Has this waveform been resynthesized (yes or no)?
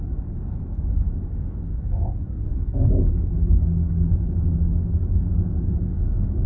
yes